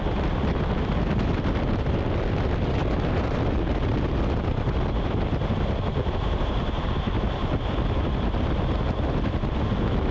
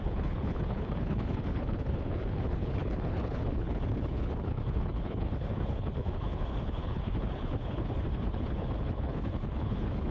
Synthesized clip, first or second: second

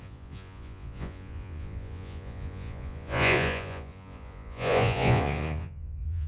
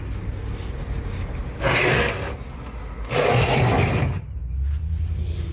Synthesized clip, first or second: first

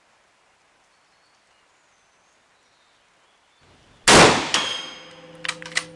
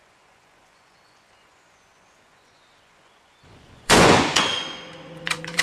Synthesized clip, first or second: second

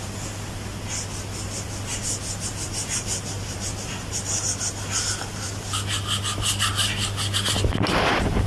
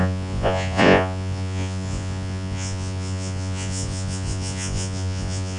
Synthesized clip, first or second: second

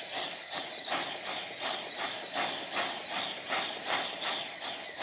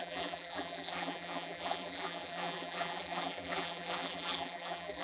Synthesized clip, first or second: second